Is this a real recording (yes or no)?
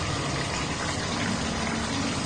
yes